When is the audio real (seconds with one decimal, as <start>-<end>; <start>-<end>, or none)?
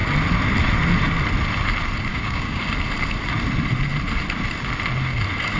0.0-2.1; 2.6-5.6